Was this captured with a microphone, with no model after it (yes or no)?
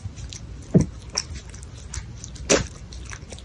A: yes